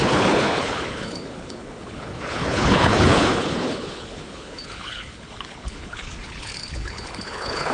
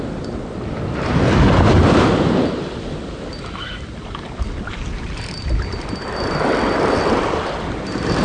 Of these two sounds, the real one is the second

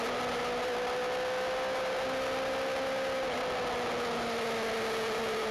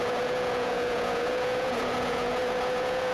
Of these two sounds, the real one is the first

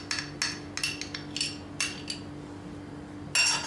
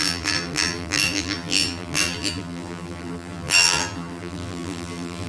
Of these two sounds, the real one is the first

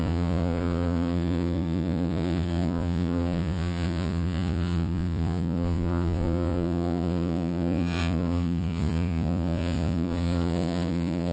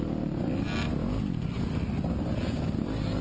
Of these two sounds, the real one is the second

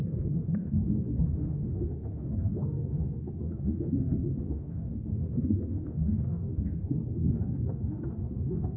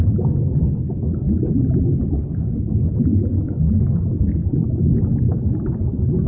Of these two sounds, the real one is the second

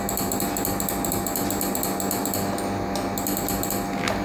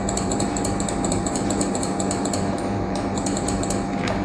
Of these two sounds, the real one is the first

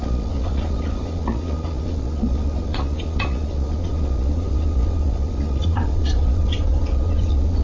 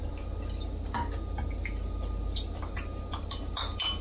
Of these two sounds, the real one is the second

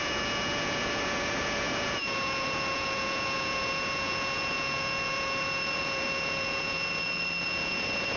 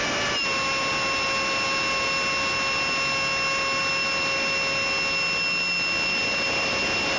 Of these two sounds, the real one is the second